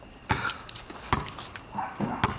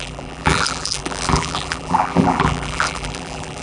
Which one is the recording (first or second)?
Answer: first